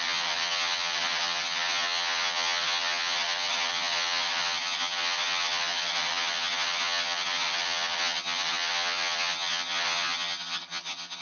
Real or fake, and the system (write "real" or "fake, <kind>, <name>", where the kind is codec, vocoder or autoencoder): fake, vocoder, HiFi-GAN